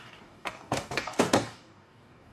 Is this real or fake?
fake